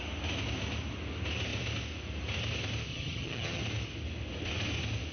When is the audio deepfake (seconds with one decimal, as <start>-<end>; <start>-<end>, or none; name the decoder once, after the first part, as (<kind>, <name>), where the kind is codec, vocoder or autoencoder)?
2.9-3.6 (vocoder, HiFi-GAN)